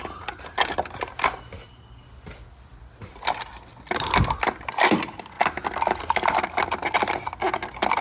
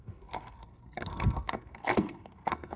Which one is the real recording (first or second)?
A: first